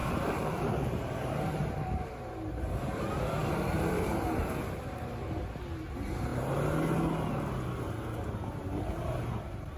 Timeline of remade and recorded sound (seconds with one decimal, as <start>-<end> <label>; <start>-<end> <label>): 0.0-2.1 remade; 2.1-3.4 recorded; 3.4-4.4 remade; 4.4-9.8 recorded